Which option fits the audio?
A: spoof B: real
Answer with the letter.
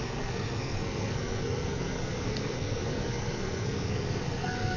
A